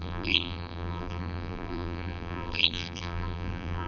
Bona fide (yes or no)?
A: no